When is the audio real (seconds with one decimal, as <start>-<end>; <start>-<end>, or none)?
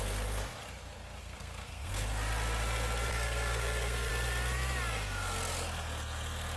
0.0-1.2; 1.9-3.1; 4.1-6.6